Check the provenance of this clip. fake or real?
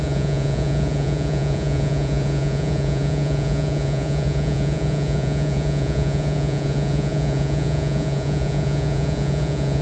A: fake